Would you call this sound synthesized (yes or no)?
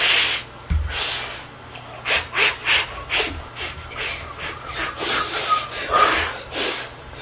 no